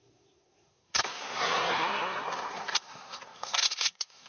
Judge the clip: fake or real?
fake